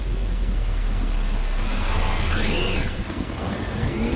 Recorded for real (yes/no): no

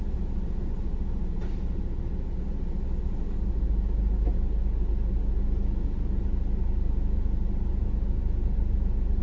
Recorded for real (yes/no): yes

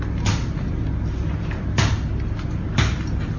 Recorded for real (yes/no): yes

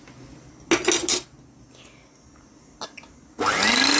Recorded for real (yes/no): yes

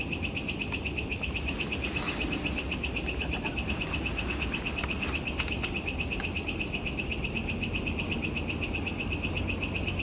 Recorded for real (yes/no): yes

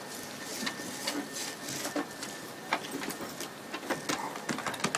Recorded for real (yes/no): yes